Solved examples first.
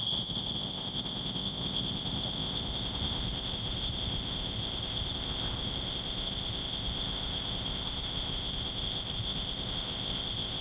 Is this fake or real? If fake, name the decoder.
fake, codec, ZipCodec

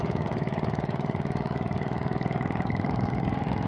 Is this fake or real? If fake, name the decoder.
fake, codec, DAC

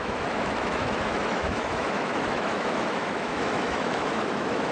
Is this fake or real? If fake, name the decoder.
fake, autoencoder, DAC-VAE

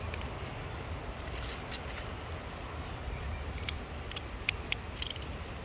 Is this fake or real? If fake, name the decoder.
real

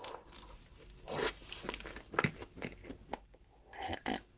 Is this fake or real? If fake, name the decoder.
real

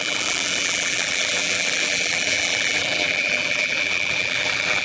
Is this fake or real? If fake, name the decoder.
fake, vocoder, BigVGAN v2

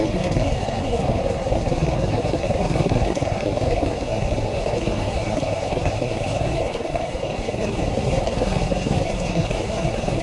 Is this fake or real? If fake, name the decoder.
fake, codec, SNAC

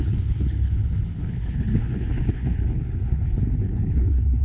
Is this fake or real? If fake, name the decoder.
fake, codec, HILCodec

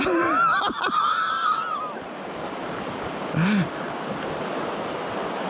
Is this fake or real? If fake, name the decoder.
real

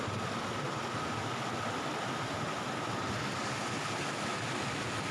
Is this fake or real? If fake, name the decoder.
real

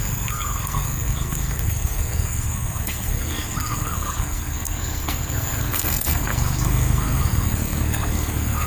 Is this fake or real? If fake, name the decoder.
fake, codec, SNAC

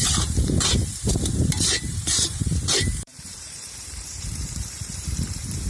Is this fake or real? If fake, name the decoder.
fake, vocoder, BigVGAN v2